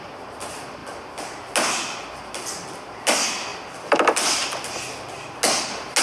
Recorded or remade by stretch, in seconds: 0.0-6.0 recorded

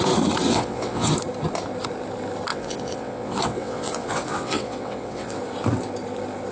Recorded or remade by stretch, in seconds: 0.0-0.5 recorded; 0.5-1.1 remade; 1.1-2.5 recorded; 2.5-5.4 remade; 5.4-6.5 recorded

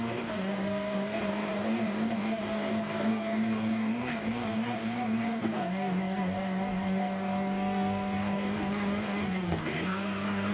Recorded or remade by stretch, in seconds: 0.0-10.5 remade